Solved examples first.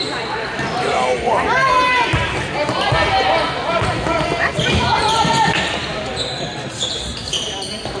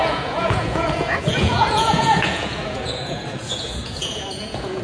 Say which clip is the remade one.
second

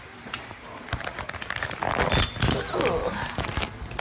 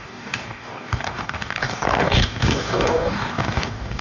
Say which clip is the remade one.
second